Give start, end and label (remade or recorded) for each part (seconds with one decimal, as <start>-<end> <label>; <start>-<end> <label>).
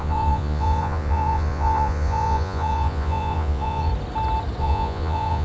0.0-3.9 remade; 3.9-4.6 recorded; 4.6-5.4 remade